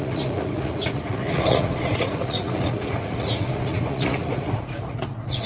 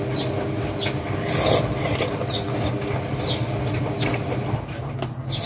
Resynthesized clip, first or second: first